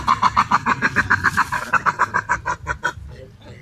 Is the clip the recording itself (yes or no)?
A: yes